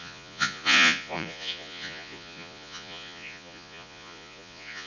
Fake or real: fake